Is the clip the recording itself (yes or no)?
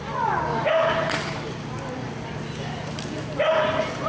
yes